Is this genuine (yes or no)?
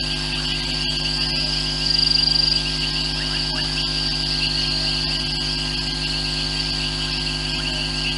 yes